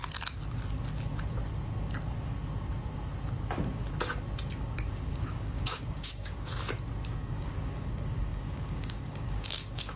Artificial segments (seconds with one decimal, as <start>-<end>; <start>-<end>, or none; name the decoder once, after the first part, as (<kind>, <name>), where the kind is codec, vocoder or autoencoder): 4.9-6.5 (codec, DAC); 7.3-10.0